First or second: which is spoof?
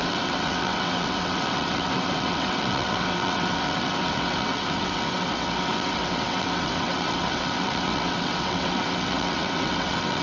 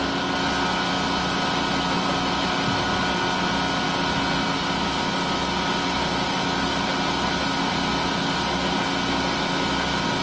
first